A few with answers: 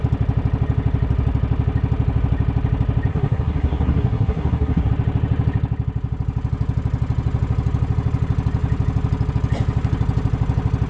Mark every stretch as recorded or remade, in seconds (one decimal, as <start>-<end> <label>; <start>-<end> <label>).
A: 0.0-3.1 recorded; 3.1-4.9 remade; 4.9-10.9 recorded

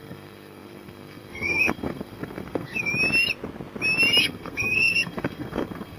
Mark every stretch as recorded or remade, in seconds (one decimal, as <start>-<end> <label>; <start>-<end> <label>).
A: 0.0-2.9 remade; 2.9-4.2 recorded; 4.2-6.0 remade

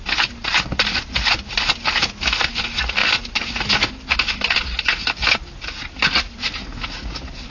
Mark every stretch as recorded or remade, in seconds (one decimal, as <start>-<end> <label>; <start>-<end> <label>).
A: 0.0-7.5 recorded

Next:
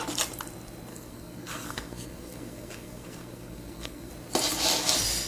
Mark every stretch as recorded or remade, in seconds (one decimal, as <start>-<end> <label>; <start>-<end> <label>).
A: 0.0-0.9 recorded; 0.9-4.1 remade; 4.1-5.3 recorded

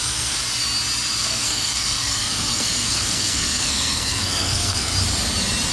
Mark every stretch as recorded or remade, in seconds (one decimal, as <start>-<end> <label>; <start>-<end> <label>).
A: 0.0-0.4 remade; 0.4-1.2 recorded; 1.2-4.9 remade; 4.9-5.7 recorded

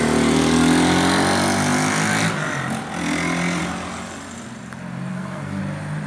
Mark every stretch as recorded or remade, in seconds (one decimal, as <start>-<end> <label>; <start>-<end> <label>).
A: 0.0-5.1 recorded; 5.1-5.6 remade; 5.6-6.1 recorded

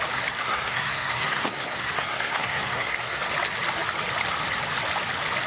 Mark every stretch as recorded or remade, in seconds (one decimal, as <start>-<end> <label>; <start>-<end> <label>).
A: 0.0-0.4 recorded; 0.4-3.2 remade; 3.2-5.5 recorded

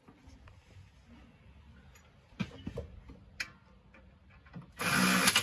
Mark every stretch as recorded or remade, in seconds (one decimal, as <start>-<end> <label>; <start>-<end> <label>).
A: 0.0-5.4 recorded